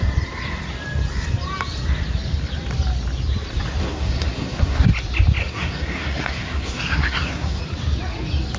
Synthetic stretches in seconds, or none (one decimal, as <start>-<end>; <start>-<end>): 3.8-4.9; 5.4-7.6